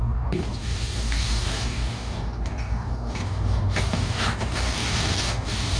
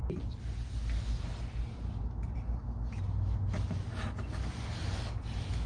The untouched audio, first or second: second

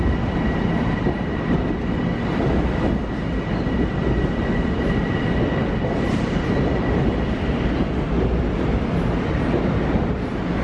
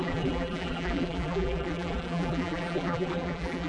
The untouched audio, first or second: first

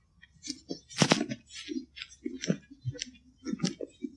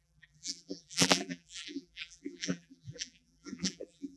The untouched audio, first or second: first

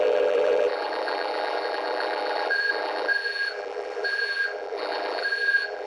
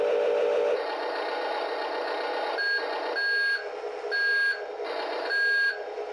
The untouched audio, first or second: second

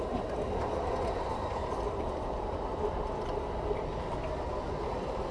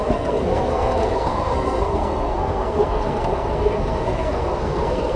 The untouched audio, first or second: first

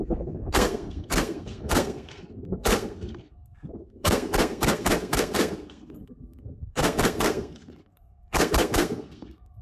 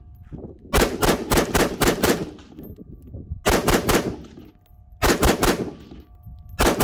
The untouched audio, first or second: second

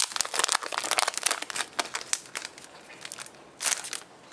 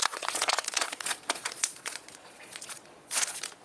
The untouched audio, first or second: first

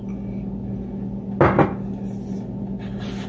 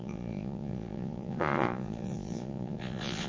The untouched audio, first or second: first